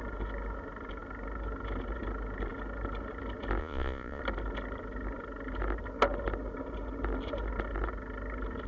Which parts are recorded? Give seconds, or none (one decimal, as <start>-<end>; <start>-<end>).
0.0-3.6; 4.2-8.7